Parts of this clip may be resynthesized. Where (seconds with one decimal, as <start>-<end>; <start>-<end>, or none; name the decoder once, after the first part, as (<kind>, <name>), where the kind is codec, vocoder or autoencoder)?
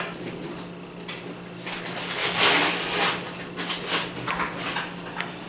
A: none